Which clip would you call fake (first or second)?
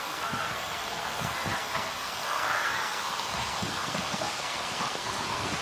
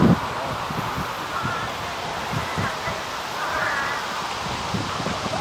first